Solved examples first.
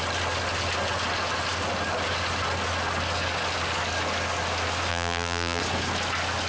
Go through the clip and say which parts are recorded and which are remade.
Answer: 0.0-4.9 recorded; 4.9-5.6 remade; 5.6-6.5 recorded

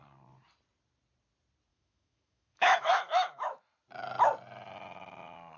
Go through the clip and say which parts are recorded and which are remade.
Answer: 0.0-1.7 recorded; 1.7-3.6 remade; 3.6-5.6 recorded

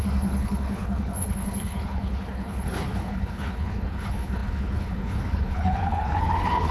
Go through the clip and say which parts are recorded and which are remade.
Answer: 0.0-6.7 remade